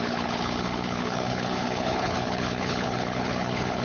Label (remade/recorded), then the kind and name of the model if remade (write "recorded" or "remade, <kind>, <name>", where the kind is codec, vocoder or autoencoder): remade, codec, HILCodec